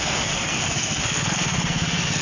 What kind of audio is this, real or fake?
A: fake